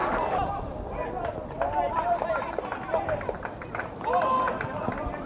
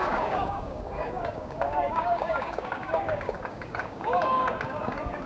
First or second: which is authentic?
first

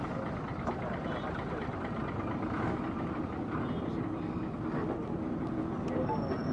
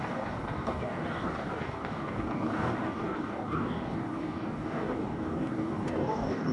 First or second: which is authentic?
first